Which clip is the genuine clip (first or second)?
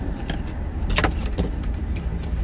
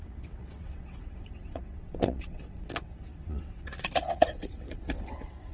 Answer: first